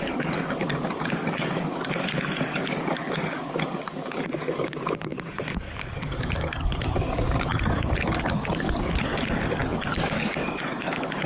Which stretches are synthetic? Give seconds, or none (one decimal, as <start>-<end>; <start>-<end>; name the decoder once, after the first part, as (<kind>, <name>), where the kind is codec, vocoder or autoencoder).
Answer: 0.0-11.3 (codec, DAC)